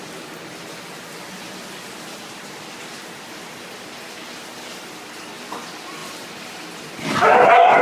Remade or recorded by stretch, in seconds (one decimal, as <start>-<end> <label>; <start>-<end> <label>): 0.0-7.8 recorded